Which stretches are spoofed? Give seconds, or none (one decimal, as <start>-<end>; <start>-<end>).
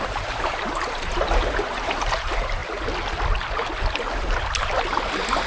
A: 0.0-2.6